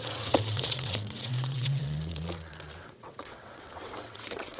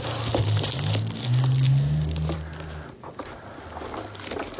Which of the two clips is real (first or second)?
second